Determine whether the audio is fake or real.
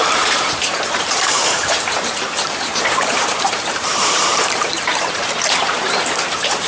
fake